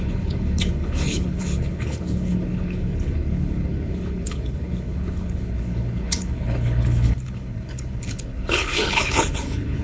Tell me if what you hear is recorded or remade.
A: remade